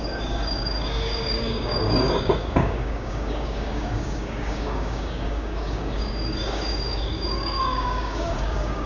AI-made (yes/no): yes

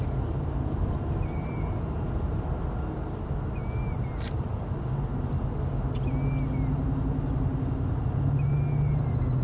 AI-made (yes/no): no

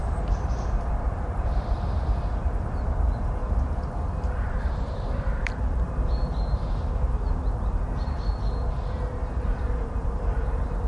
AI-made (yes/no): yes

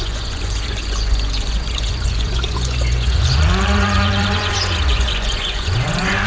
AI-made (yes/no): yes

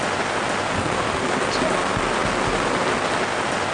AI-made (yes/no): no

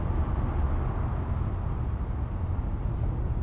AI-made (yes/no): no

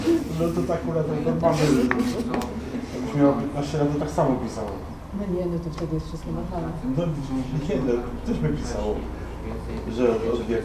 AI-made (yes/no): no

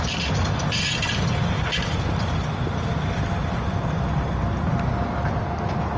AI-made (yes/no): no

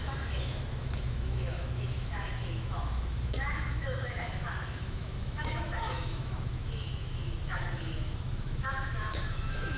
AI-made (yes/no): yes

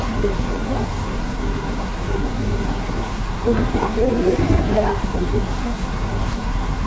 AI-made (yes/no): yes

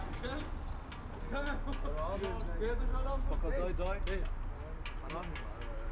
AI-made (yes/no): no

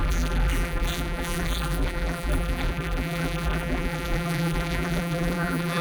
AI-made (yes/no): yes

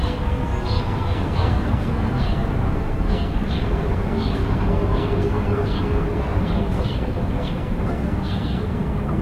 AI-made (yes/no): yes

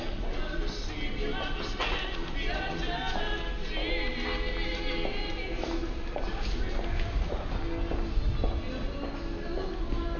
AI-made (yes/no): no